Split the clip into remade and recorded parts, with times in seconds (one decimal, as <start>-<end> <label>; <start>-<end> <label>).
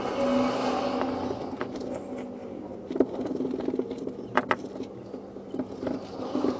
0.0-6.6 recorded